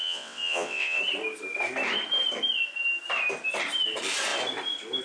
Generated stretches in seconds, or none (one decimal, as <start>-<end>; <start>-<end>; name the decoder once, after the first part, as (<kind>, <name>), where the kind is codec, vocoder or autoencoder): 0.0-1.0 (vocoder, WaveNeXt)